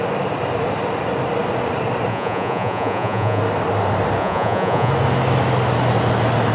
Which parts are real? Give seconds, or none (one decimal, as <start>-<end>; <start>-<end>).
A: 0.0-2.1; 3.4-4.2; 4.9-6.5